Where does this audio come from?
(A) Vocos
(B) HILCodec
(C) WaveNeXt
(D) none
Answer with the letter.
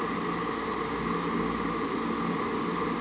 D